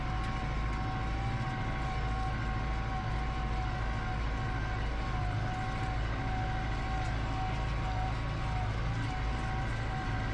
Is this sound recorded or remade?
recorded